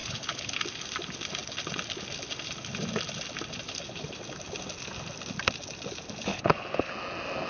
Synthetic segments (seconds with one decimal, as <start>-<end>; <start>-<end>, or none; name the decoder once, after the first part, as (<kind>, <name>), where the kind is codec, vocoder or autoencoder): 0.0-0.6 (codec, HILCodec); 6.3-6.9